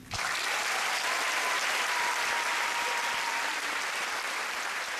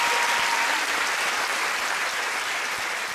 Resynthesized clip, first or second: first